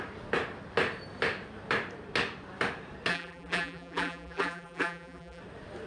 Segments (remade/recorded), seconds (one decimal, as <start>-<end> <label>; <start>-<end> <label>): 0.0-3.1 recorded; 3.1-5.4 remade; 5.4-5.9 recorded